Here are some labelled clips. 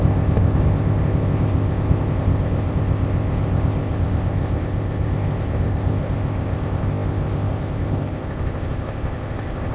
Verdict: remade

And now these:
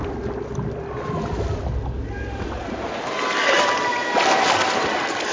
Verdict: recorded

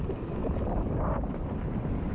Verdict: recorded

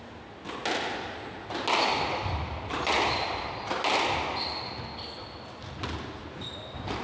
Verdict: recorded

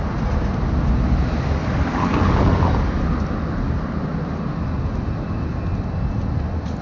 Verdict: recorded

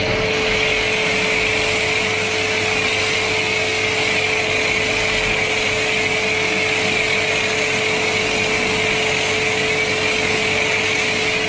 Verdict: recorded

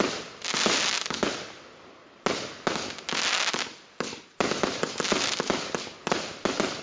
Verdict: recorded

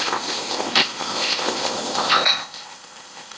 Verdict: remade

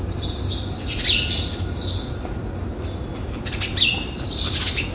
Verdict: recorded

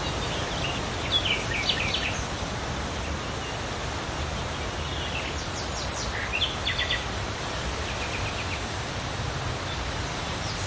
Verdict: recorded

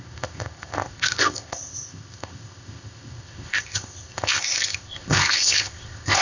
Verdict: remade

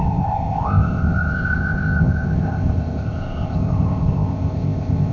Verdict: remade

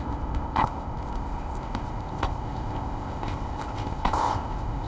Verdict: remade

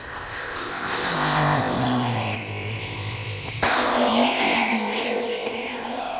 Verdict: remade